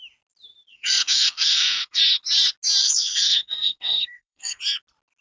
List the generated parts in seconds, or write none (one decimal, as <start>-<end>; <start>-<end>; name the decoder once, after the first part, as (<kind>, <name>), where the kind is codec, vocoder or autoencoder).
0.7-2.0 (codec, SNAC); 2.8-4.6